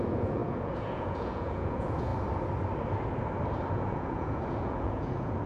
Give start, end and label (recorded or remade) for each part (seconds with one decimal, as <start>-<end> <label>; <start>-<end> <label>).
0.0-2.1 remade; 2.1-3.7 recorded; 3.7-5.5 remade